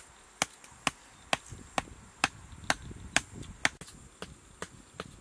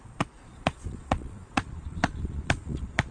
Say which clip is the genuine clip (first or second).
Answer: first